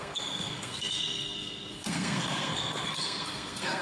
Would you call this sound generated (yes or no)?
yes